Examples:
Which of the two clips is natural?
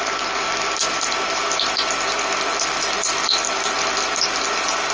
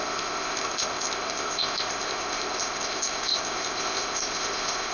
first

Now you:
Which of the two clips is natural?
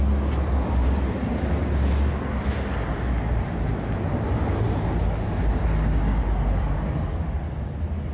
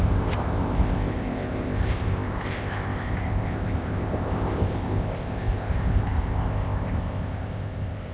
first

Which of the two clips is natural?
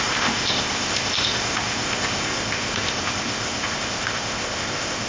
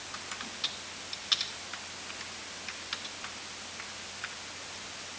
second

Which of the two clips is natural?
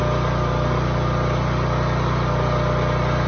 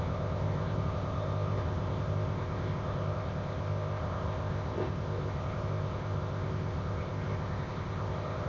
first